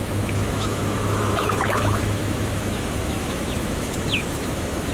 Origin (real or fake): fake